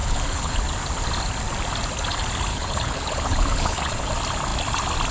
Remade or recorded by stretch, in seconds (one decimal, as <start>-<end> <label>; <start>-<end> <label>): 0.0-0.6 remade; 0.6-2.5 recorded; 2.5-4.1 remade; 4.1-5.1 recorded